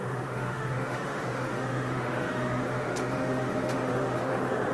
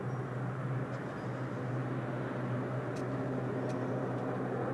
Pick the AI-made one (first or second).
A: first